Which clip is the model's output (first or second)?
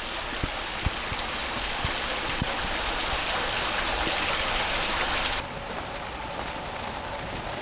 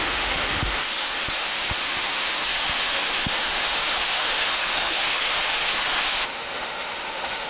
second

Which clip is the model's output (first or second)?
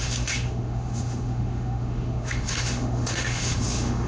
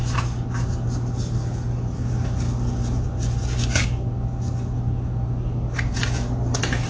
first